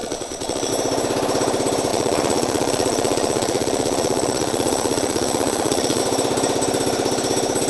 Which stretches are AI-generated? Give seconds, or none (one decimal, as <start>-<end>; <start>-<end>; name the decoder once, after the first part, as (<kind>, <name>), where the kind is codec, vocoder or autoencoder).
0.0-0.7 (vocoder, Vocos); 1.9-6.0